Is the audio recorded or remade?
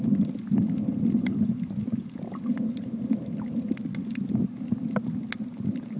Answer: recorded